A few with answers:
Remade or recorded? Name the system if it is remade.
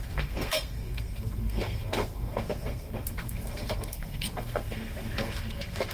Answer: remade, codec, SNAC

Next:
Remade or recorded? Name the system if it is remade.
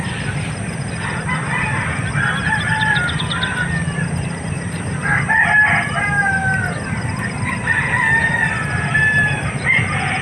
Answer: recorded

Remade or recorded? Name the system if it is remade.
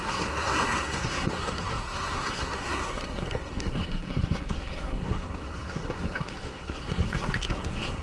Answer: remade, codec, SNAC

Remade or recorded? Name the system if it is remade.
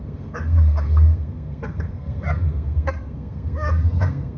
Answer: remade, codec, SNAC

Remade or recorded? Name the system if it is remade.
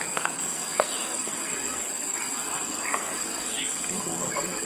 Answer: remade, codec, SNAC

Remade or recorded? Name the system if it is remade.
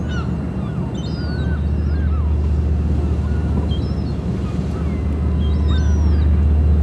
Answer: recorded